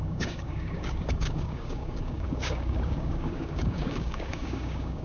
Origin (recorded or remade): remade